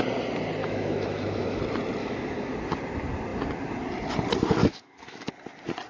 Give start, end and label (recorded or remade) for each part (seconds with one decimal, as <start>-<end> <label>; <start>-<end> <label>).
0.0-0.6 recorded; 0.6-1.6 remade; 1.6-2.0 recorded; 2.0-2.5 remade; 2.5-4.6 recorded; 4.6-5.3 remade; 5.3-5.9 recorded

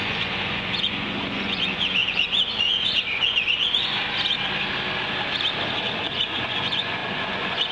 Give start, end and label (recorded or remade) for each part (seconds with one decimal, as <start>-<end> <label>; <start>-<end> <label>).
0.0-4.0 remade; 4.0-6.0 recorded; 6.0-7.7 remade

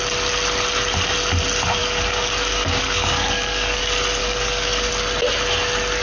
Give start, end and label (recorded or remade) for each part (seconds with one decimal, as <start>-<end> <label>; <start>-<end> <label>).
0.0-1.8 recorded; 1.8-3.8 remade; 3.8-4.2 recorded; 4.2-4.9 remade; 4.9-6.0 recorded

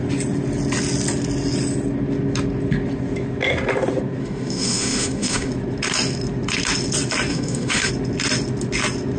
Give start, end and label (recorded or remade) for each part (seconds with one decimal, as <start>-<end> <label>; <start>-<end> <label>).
0.0-4.2 recorded; 4.2-5.5 remade; 5.5-7.3 recorded; 7.3-7.9 remade; 7.9-9.2 recorded

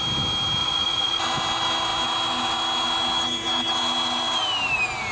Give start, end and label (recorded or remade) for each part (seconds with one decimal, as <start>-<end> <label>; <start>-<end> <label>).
0.0-0.6 recorded; 0.6-1.2 remade; 1.2-5.1 recorded

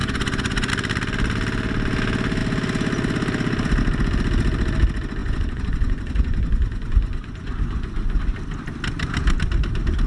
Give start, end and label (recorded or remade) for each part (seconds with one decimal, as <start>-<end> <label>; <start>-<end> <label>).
0.0-0.7 remade; 0.7-5.2 recorded; 5.2-8.2 remade; 8.2-10.1 recorded